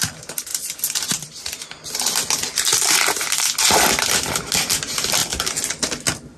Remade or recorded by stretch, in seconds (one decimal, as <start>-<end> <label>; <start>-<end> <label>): 0.0-6.4 recorded